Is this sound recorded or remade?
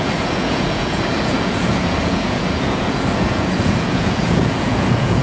remade